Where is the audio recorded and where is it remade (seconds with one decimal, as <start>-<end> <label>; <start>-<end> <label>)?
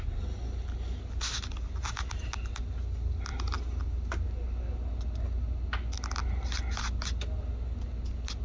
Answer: 0.0-8.4 recorded